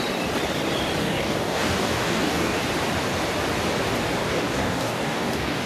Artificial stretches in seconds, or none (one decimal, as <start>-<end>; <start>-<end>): 1.0-2.6; 4.2-5.7